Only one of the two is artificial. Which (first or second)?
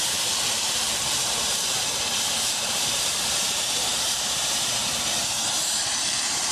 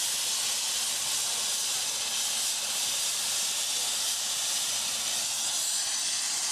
first